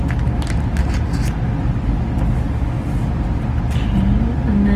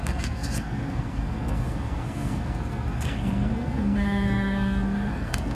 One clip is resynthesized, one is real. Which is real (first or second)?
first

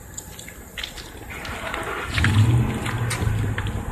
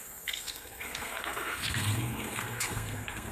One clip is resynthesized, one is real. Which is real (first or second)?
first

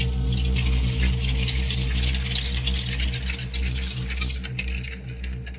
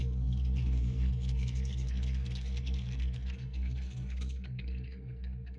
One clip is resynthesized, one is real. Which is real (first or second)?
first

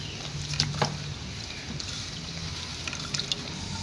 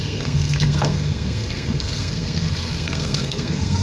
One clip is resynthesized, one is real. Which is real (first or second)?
first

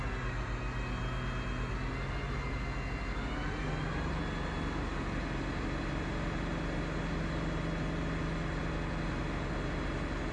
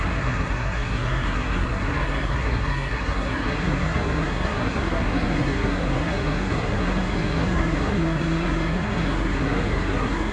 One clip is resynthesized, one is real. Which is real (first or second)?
first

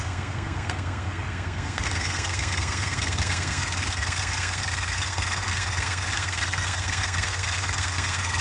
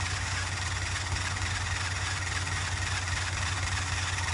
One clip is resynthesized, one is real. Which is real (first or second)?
second